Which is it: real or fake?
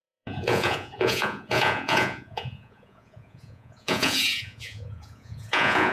fake